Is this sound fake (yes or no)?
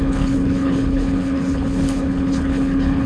yes